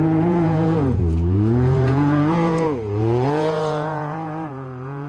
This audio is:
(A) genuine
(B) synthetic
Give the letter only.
B